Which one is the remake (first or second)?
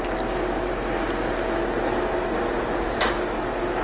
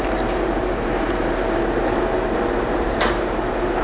second